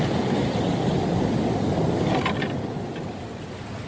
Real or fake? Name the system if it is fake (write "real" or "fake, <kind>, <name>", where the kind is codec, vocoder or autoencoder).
real